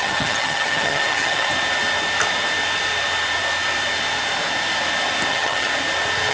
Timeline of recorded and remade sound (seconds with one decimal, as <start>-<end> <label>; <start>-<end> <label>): 0.0-1.5 remade; 1.5-5.3 recorded; 5.3-5.7 remade; 5.7-6.3 recorded